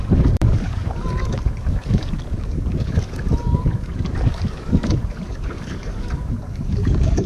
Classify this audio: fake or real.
fake